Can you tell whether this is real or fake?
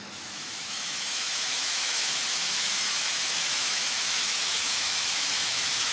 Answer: fake